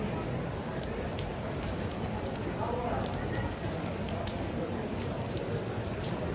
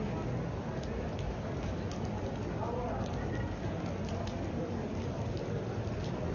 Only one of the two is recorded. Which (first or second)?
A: second